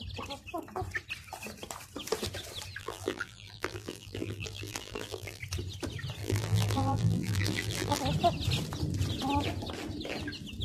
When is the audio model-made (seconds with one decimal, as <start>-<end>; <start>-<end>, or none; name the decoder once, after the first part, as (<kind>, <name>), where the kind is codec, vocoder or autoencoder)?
2.8-5.4 (vocoder, BigVGAN v2); 6.2-8.0